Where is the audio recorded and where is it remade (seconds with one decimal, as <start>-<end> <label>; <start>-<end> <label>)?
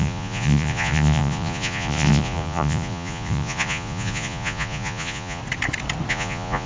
0.0-5.4 remade; 5.4-6.1 recorded; 6.1-6.7 remade